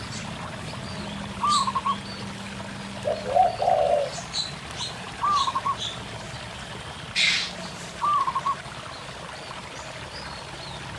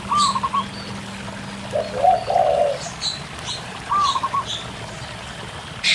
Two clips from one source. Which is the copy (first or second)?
first